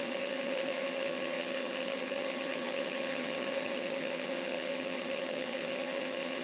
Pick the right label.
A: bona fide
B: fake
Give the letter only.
B